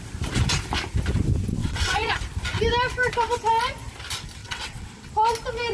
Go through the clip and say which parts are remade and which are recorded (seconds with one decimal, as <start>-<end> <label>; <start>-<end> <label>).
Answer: 0.0-1.6 recorded; 1.6-2.1 remade; 2.1-4.4 recorded; 4.4-5.1 remade; 5.1-5.7 recorded